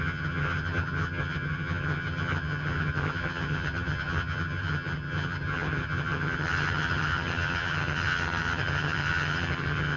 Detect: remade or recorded remade